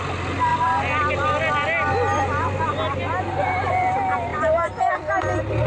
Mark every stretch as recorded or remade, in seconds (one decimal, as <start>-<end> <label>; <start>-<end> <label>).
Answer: 0.0-5.7 recorded